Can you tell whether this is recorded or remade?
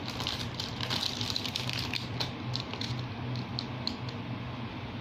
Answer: recorded